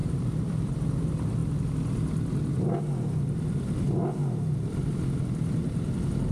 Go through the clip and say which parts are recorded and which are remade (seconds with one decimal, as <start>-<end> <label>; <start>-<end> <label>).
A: 0.0-0.7 remade; 0.7-6.3 recorded